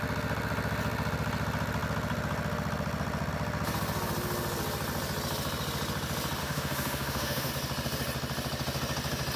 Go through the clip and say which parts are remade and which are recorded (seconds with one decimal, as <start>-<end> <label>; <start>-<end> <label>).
0.0-6.4 recorded; 6.4-7.5 remade; 7.5-9.4 recorded